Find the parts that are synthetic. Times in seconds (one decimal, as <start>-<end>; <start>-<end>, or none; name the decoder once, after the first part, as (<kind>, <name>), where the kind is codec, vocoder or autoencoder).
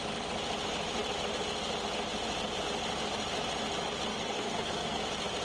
4.1-5.0 (codec, SNAC)